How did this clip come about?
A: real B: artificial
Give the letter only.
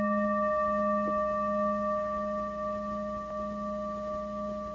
A